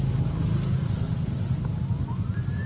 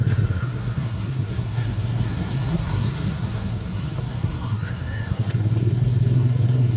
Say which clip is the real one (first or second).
first